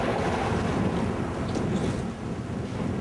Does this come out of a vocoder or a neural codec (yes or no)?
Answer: no